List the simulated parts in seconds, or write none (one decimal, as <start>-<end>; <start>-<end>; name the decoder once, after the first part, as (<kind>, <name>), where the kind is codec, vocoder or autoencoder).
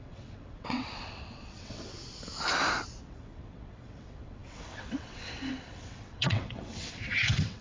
0.0-1.9 (vocoder, WaveNeXt); 3.1-7.6